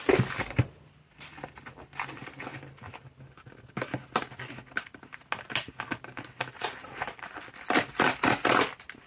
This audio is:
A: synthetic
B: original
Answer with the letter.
B